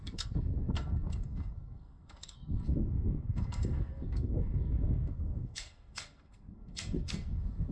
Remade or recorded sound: remade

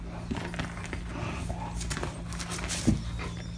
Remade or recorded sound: recorded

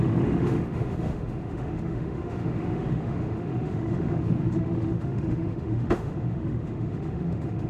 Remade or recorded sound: remade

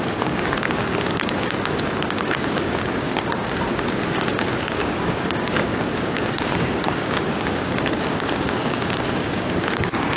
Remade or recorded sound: remade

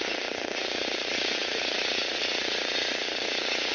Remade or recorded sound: recorded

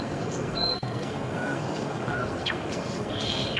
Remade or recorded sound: remade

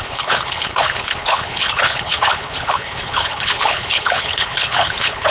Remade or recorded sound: remade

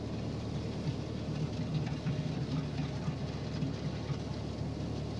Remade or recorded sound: recorded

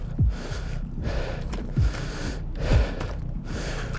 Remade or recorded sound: recorded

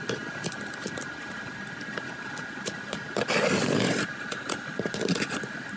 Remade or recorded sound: recorded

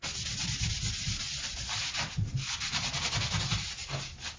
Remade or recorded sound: recorded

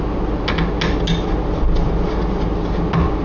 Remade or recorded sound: recorded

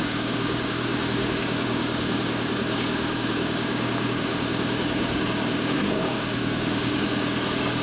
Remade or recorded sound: remade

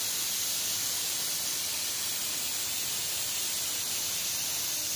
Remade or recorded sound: remade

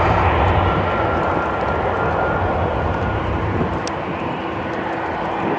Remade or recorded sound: recorded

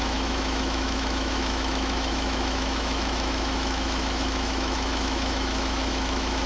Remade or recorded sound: remade